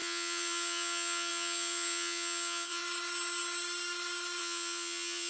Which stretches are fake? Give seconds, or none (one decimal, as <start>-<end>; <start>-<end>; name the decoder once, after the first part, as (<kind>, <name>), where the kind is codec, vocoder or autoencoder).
0.0-2.8 (vocoder, Vocos); 4.4-5.3